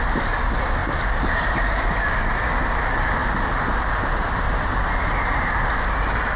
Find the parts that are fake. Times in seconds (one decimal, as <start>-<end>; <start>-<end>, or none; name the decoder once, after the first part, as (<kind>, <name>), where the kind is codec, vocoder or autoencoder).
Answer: none